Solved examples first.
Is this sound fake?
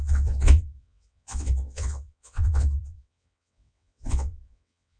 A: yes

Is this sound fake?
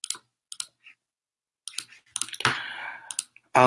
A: no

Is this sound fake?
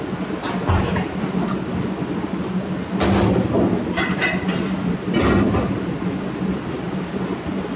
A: no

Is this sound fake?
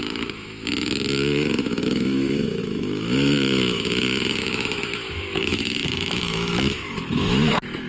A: yes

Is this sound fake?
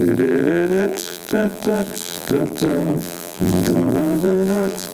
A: yes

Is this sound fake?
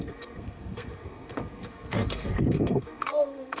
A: yes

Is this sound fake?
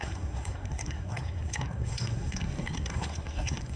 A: yes